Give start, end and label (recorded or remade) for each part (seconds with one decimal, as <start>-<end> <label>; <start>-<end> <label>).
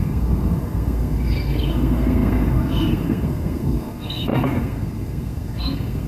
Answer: 0.0-6.1 remade